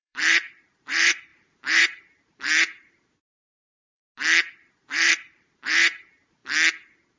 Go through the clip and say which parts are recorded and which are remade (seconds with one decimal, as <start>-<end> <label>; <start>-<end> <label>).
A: 0.0-4.0 remade; 4.0-4.7 recorded; 4.7-6.4 remade; 6.4-7.2 recorded